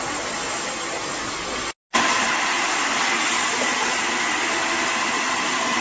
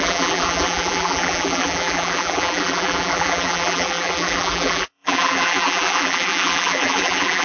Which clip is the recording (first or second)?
first